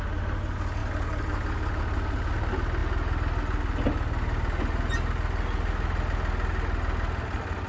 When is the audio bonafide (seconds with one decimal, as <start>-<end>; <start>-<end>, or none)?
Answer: 0.0-7.7